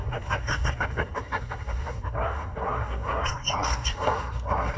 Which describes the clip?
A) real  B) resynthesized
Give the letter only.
B